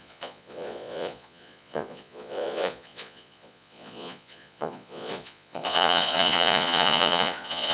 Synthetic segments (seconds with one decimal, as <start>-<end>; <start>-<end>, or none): 0.0-7.7